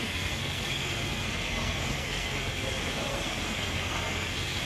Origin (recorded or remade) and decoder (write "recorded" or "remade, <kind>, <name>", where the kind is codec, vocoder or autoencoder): remade, codec, SNAC